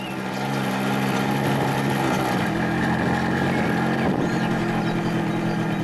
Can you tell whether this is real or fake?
real